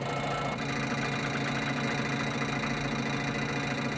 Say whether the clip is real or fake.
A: real